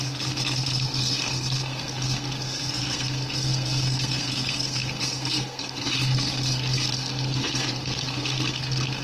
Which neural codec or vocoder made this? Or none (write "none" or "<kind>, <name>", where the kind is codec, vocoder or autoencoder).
codec, SNAC